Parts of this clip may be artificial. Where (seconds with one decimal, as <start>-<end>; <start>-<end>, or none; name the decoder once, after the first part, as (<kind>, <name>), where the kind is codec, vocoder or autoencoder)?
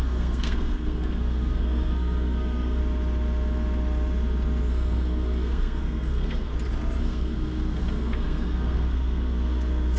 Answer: 0.0-2.8 (codec, SNAC); 4.7-6.5; 7.0-10.0